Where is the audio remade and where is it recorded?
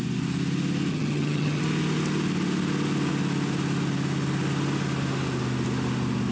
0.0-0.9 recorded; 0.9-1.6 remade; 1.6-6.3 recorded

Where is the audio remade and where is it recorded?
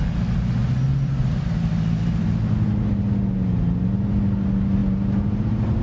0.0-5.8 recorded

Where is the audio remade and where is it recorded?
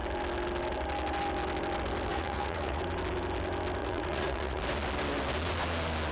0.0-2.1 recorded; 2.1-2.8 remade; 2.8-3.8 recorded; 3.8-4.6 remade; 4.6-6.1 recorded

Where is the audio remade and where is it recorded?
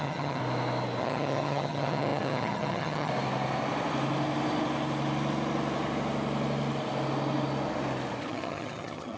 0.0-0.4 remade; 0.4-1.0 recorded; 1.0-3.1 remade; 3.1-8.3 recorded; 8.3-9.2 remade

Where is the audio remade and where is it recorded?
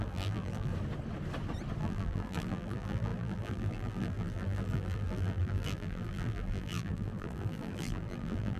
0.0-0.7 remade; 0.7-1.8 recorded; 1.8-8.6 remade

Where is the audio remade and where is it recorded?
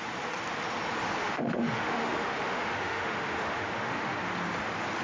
0.0-1.2 recorded; 1.2-4.2 remade; 4.2-5.0 recorded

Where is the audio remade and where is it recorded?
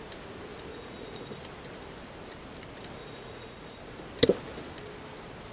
0.0-0.7 recorded; 0.7-1.4 remade; 1.4-3.0 recorded; 3.0-3.8 remade; 3.8-5.5 recorded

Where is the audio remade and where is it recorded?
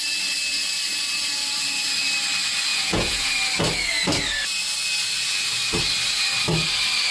0.0-2.7 recorded; 2.7-3.3 remade; 3.3-7.1 recorded